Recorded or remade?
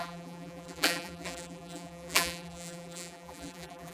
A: remade